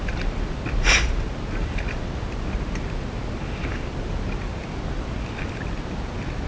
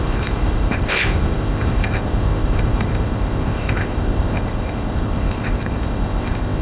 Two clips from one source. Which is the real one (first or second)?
first